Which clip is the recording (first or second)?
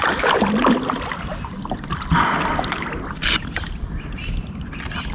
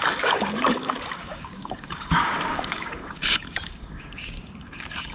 first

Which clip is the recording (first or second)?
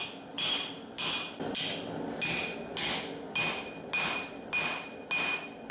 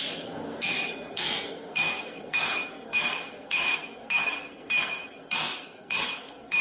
first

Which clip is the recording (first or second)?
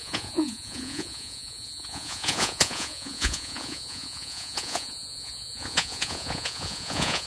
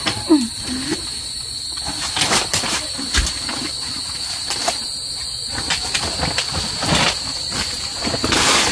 second